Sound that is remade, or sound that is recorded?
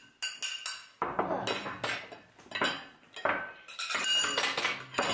recorded